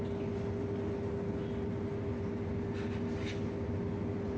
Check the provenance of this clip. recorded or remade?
recorded